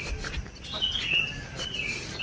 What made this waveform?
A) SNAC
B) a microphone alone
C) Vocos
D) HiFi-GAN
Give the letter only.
B